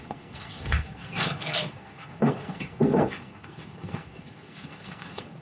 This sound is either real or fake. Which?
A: fake